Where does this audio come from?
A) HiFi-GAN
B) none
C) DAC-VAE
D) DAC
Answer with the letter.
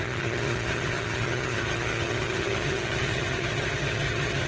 A